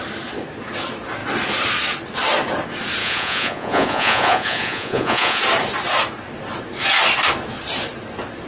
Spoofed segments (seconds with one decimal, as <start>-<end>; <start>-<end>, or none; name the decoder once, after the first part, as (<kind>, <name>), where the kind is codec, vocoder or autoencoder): 3.0-5.4 (vocoder, Vocos)